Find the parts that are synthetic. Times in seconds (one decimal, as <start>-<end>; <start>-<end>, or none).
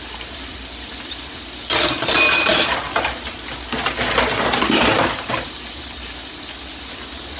none